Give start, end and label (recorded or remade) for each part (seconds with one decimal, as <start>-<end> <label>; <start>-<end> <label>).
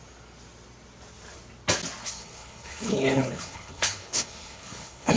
0.0-2.0 recorded; 2.0-5.2 remade